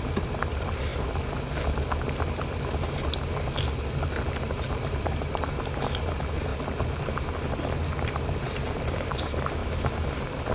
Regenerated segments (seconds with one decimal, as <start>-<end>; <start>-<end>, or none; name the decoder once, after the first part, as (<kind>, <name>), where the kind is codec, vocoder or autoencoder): 0.0-0.9 (vocoder, BigVGAN v2); 4.4-6.5; 8.0-9.6

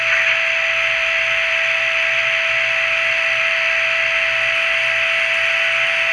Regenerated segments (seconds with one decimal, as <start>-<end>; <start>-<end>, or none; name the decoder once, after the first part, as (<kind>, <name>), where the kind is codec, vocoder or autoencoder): none

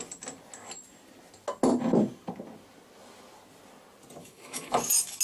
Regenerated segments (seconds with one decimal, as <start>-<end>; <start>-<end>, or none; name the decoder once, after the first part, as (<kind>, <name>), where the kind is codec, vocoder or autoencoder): 4.2-5.2 (autoencoder, DAC-VAE)

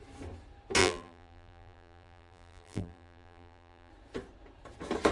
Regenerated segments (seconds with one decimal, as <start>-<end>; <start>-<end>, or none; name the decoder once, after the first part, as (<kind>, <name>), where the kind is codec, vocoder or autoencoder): 0.8-3.9 (vocoder, BigVGAN v2)

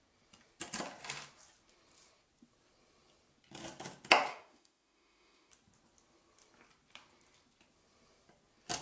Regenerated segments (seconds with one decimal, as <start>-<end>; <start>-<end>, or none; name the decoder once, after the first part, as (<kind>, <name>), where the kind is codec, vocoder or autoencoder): 4.3-5.5 (autoencoder, DAC-VAE)

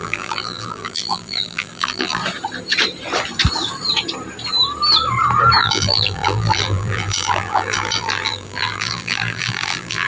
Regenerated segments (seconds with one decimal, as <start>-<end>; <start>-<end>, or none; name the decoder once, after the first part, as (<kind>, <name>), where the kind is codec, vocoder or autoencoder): 0.0-2.2 (vocoder, BigVGAN v2); 5.6-10.1